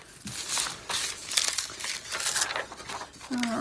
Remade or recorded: recorded